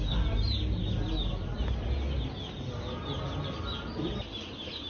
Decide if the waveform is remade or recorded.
recorded